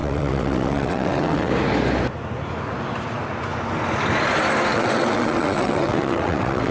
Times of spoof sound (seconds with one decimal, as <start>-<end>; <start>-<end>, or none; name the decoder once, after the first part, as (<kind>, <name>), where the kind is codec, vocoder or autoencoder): 0.0-1.5 (vocoder, WaveNeXt); 4.7-6.7